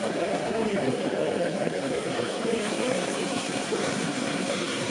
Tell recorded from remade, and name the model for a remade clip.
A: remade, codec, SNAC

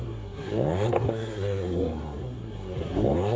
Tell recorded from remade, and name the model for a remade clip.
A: remade, codec, SNAC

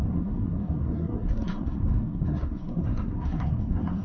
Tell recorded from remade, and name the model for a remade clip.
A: remade, codec, SNAC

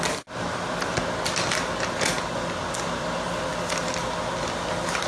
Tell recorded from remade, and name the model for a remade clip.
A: recorded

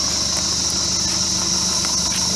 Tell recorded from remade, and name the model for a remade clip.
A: recorded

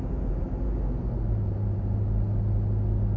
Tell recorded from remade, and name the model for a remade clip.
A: recorded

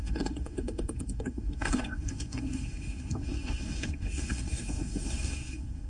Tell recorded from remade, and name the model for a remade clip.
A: remade, codec, SNAC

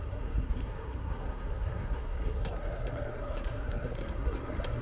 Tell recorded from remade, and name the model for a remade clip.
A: remade, codec, SNAC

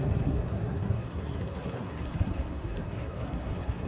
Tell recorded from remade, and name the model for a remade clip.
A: remade, codec, SNAC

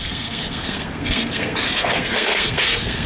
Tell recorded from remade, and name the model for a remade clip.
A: remade, codec, SNAC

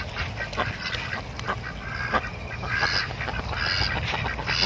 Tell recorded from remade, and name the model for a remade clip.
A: recorded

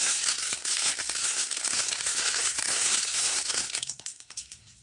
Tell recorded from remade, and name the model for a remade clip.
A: remade, codec, SNAC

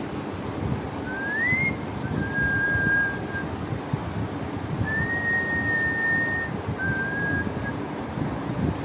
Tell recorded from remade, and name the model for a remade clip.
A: recorded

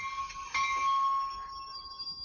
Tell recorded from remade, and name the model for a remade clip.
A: recorded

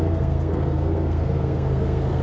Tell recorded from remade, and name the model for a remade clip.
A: remade, codec, SNAC